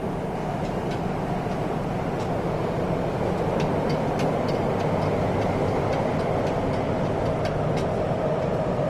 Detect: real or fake real